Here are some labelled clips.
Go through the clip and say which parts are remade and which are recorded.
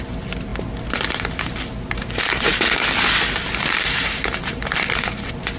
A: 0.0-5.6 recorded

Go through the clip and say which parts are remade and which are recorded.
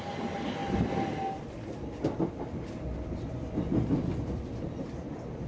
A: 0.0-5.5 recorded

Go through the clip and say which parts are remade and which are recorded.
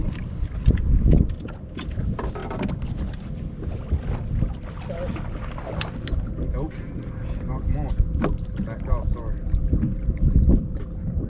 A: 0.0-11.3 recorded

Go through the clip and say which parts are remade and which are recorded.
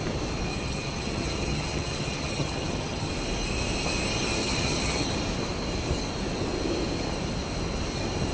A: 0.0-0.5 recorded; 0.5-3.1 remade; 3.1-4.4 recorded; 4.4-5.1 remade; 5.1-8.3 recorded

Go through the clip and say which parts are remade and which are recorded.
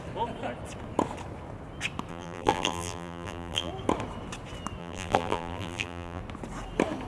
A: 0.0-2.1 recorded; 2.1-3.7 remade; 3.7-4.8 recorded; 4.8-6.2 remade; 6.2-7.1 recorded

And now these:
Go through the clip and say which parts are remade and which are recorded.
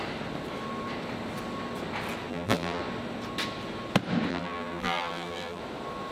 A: 0.0-2.3 recorded; 2.3-2.8 remade; 2.8-4.3 recorded; 4.3-5.6 remade; 5.6-6.1 recorded